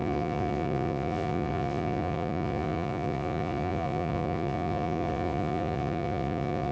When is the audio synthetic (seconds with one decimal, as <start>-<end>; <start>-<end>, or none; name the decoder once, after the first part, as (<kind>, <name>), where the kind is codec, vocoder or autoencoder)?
0.0-6.7 (vocoder, Vocos)